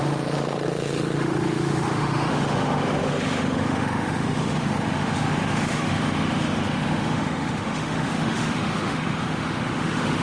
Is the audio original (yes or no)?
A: no